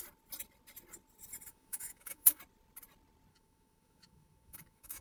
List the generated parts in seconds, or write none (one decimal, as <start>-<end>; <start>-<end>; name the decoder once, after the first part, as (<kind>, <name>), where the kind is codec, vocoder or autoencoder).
1.5-2.4 (autoencoder, DAC-VAE); 3.3-5.0